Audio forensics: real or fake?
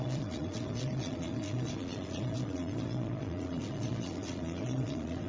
fake